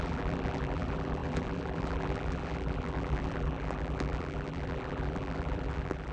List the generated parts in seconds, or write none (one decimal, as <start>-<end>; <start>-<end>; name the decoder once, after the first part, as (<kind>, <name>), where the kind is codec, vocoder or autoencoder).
0.0-6.1 (vocoder, BigVGAN v2)